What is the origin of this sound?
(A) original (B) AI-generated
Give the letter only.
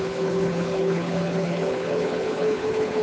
B